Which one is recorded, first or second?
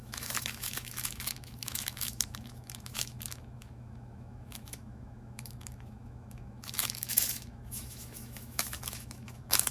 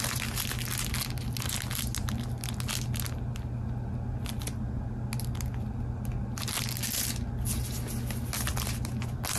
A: second